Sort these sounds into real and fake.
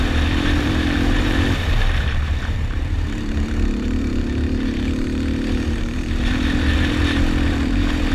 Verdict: fake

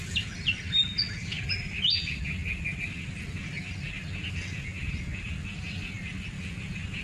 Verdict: real